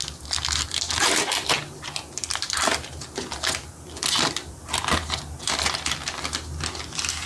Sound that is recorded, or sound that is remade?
recorded